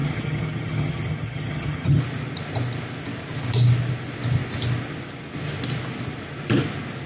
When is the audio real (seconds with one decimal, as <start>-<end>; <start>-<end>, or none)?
2.0-7.1